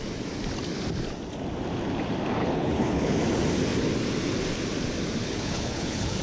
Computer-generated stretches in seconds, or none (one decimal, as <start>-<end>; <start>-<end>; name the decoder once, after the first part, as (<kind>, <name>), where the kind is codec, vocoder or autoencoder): 2.4-3.2 (codec, HILCodec); 5.2-6.2